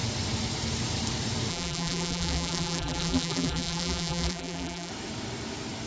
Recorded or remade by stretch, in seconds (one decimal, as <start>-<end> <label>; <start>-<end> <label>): 0.0-1.5 recorded; 1.5-4.9 remade; 4.9-5.9 recorded